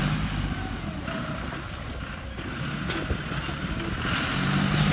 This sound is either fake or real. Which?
real